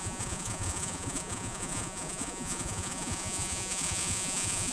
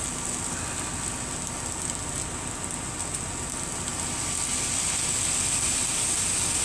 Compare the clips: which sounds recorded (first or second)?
second